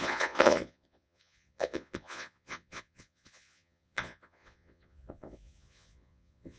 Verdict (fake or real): fake